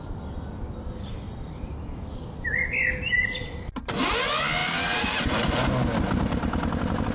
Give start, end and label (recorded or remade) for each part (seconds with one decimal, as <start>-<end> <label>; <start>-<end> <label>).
0.0-7.1 recorded